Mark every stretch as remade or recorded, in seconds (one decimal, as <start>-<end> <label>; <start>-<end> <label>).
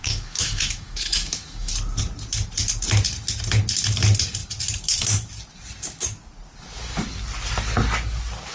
0.0-1.7 remade; 1.7-8.5 recorded